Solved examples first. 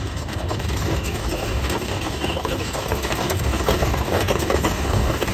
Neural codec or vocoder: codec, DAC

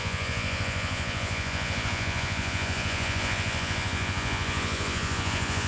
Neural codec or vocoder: vocoder, Vocos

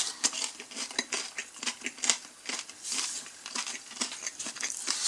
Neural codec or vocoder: none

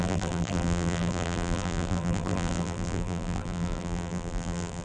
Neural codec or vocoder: vocoder, BigVGAN v2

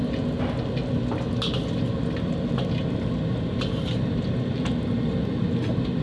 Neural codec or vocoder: none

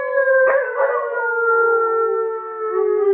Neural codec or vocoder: none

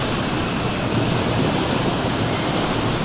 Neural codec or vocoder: none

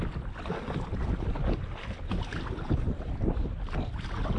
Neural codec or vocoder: none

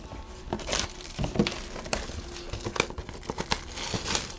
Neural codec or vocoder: none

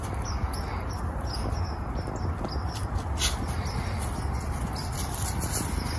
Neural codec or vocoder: none